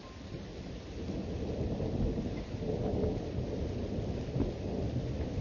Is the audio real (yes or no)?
yes